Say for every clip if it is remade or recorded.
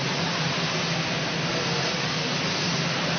recorded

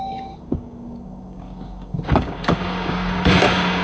remade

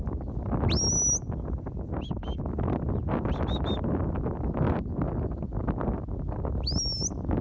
recorded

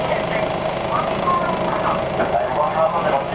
recorded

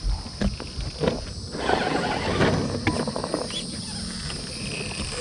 recorded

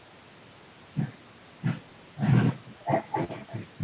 recorded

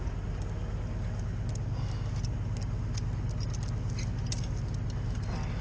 recorded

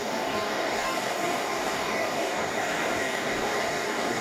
remade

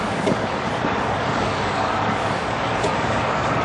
remade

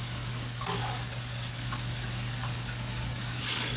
remade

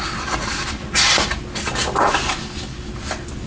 recorded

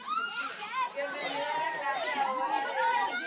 recorded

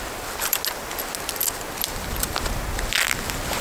recorded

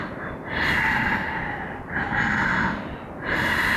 recorded